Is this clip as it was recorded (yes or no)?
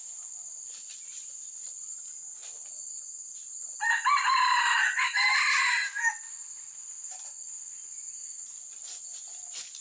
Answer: yes